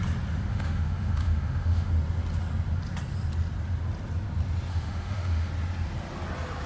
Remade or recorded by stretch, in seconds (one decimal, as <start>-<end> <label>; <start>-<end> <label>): 0.0-0.5 recorded; 0.5-1.9 remade; 1.9-4.7 recorded; 4.7-5.5 remade; 5.5-6.7 recorded